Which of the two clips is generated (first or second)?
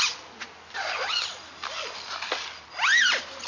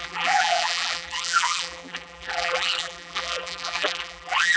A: second